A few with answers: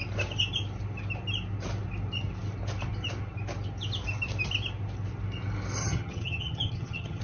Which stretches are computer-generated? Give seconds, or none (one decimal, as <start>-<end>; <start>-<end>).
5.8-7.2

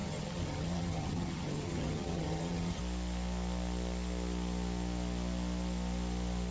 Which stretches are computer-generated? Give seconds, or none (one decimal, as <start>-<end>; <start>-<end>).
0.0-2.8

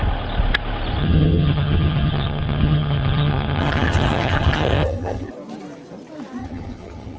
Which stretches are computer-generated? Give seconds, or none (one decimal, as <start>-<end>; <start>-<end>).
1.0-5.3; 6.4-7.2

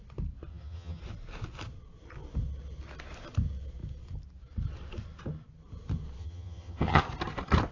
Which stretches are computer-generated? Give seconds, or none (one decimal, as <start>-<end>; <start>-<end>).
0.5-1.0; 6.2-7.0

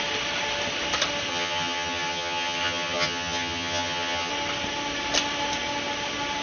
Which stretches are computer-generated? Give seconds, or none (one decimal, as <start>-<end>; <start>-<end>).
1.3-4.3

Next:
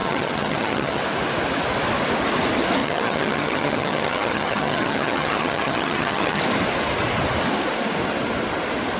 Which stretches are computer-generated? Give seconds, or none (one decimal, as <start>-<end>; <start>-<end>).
0.0-1.0; 2.8-6.4

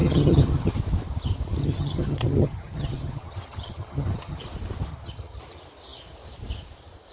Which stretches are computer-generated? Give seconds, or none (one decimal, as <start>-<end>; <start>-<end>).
0.0-0.7; 1.6-4.4; 4.9-5.4

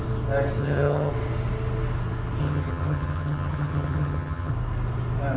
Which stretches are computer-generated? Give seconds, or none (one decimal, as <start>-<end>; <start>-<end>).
0.6-1.1; 2.4-4.5